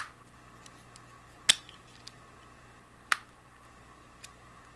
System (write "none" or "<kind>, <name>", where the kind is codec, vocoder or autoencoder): none